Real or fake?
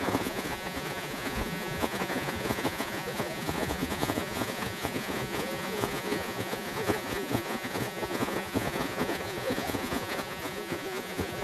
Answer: fake